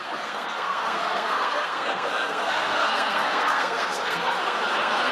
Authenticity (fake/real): fake